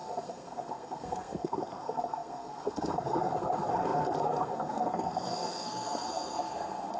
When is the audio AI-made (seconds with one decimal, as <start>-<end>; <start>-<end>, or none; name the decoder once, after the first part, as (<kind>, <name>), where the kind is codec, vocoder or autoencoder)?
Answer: 0.0-7.0 (codec, SNAC)